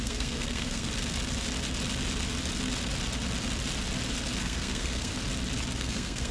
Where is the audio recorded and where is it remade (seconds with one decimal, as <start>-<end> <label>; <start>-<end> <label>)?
0.0-0.9 remade; 0.9-4.4 recorded; 4.4-5.1 remade; 5.1-5.8 recorded; 5.8-6.3 remade